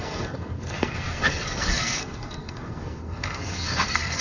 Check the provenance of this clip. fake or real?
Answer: fake